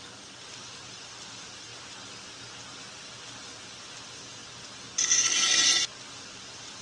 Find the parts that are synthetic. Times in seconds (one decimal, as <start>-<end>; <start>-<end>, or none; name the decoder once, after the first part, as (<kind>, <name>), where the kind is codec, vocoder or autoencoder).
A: 0.0-1.7 (vocoder, BigVGAN v2); 4.0-4.4; 6.1-6.8